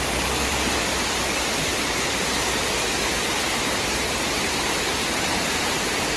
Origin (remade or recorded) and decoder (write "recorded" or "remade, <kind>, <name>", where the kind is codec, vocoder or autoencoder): remade, vocoder, BigVGAN v2